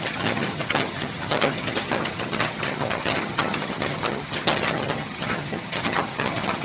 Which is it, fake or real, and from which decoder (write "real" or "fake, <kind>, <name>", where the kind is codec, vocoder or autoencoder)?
fake, vocoder, HiFi-GAN